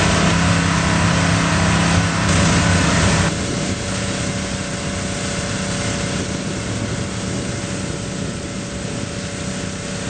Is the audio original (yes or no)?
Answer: yes